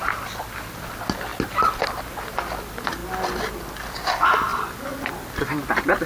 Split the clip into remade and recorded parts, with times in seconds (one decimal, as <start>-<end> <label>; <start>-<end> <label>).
0.0-4.5 recorded; 4.5-6.1 remade